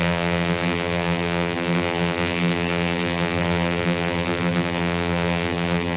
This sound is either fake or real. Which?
fake